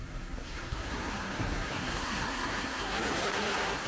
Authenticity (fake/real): fake